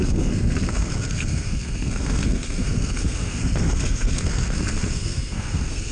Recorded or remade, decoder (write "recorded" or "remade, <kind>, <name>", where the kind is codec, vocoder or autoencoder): remade, codec, SNAC